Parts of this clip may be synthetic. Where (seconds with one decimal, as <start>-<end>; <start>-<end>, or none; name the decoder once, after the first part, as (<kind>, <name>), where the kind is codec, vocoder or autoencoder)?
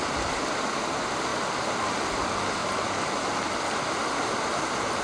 1.3-2.2 (vocoder, BigVGAN v2); 2.6-5.0